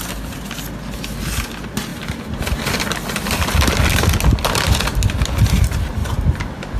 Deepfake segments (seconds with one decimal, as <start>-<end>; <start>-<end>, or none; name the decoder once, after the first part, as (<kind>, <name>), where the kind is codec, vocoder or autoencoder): none